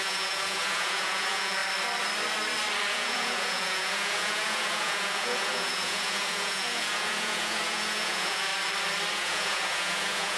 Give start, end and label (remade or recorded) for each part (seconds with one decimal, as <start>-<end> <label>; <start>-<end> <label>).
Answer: 0.0-1.6 remade; 1.6-2.9 recorded; 2.9-8.5 remade; 8.5-9.1 recorded; 9.1-10.4 remade